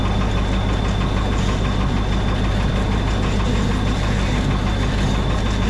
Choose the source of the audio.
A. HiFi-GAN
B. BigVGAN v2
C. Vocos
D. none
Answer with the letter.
D